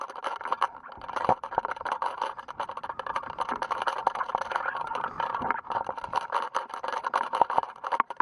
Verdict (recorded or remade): recorded